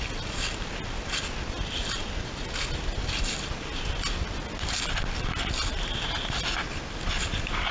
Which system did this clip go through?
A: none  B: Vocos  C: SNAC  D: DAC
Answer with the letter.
A